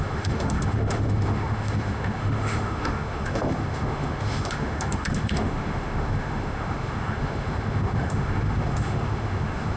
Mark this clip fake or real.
fake